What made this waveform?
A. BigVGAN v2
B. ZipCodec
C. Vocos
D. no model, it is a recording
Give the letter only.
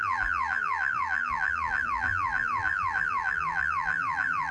A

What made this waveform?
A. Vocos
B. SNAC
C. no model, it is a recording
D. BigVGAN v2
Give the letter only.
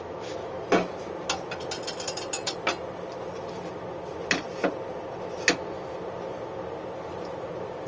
C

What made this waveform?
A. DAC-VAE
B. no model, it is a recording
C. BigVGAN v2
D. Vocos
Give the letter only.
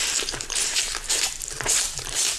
C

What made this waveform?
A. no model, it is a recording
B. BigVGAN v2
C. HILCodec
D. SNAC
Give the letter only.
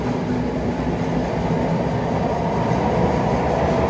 A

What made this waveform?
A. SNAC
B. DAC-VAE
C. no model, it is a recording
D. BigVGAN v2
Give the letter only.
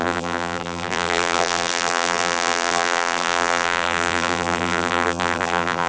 D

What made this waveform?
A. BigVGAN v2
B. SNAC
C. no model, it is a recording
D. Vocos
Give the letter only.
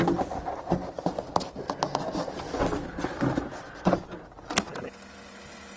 C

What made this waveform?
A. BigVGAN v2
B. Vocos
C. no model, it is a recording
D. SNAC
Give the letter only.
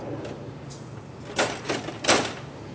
C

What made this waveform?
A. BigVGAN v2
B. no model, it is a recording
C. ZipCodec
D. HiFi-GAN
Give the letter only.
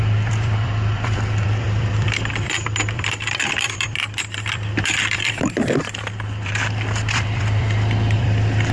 A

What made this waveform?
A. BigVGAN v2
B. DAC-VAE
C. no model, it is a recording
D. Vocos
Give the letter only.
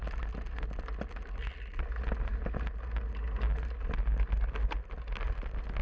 C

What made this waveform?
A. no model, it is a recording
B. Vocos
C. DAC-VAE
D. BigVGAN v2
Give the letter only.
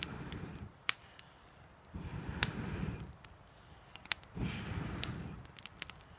D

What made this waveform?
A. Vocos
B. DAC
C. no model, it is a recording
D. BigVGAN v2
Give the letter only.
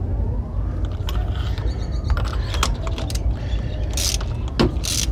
C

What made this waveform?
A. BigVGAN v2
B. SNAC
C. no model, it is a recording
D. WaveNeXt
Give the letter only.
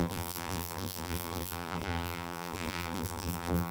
A